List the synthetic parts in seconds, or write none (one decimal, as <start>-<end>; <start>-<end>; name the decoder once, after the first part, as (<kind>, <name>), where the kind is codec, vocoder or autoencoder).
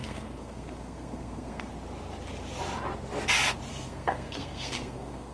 0.0-1.7 (codec, SNAC); 3.7-5.3